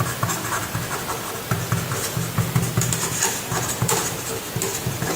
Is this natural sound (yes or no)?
yes